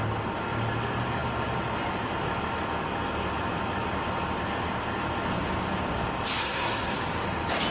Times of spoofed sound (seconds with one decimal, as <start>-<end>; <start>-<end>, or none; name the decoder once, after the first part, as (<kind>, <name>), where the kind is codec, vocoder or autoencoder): 6.4-7.0 (codec, SNAC)